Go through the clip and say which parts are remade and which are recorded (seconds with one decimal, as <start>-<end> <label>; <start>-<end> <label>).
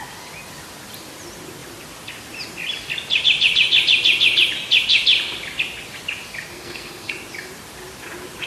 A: 0.0-6.5 recorded; 6.5-7.1 remade; 7.1-8.5 recorded